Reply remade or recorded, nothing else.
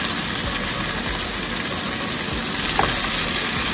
recorded